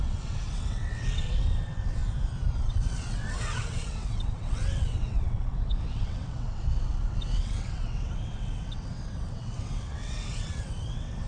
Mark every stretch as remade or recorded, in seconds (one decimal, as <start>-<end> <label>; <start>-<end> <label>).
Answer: 0.0-2.0 remade; 2.0-2.7 recorded; 2.7-11.3 remade